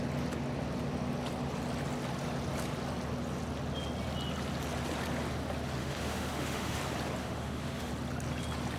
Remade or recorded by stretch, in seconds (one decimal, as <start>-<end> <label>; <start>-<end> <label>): 0.0-5.8 recorded; 5.8-6.8 remade; 6.8-7.2 recorded; 7.2-7.9 remade; 7.9-8.8 recorded